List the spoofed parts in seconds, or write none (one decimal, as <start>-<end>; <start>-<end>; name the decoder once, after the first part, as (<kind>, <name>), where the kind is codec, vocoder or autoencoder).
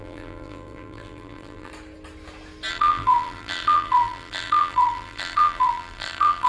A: 0.0-1.7 (vocoder, BigVGAN v2); 2.7-6.5